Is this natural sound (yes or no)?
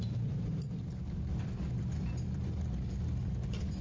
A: no